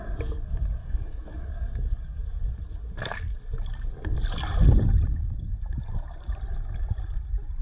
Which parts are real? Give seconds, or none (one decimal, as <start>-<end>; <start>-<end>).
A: 0.0-0.8; 2.5-7.6